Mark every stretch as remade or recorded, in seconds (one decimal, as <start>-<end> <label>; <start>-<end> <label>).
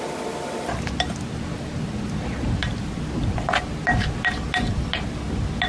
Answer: 0.0-5.7 recorded